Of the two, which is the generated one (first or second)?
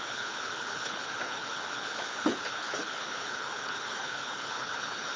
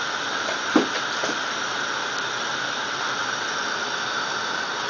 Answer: first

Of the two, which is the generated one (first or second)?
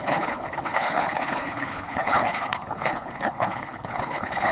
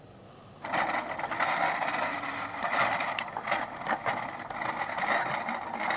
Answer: first